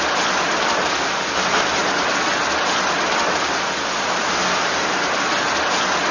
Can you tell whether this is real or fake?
real